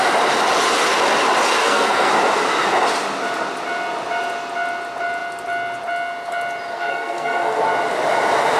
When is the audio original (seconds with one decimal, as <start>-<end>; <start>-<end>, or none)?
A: 0.0-1.6; 2.1-6.7; 7.6-8.6